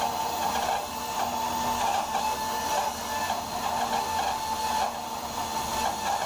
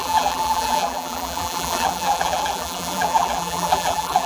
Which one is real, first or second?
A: first